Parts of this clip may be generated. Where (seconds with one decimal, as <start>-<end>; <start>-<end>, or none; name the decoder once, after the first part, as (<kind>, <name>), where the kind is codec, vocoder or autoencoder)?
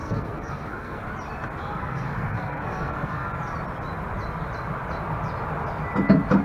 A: 0.0-1.0 (codec, SNAC); 1.6-3.3